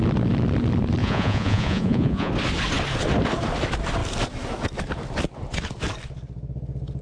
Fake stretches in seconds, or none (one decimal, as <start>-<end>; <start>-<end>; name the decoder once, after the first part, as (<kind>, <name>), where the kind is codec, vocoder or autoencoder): 1.0-2.3 (vocoder, Vocos)